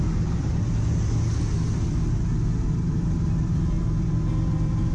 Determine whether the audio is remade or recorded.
recorded